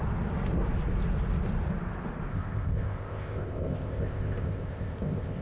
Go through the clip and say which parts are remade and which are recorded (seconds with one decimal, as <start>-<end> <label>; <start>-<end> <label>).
0.0-2.3 recorded; 2.3-5.4 remade